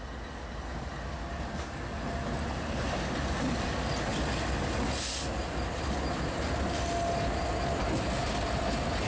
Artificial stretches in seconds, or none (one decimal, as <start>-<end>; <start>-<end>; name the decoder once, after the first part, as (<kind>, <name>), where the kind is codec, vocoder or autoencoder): none